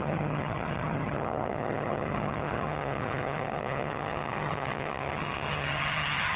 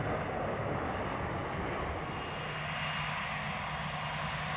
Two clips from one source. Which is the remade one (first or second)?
first